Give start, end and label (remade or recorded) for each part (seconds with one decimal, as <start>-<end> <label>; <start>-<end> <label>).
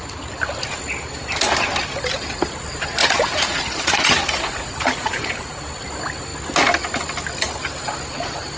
0.0-3.0 recorded; 3.0-5.4 remade; 5.4-8.6 recorded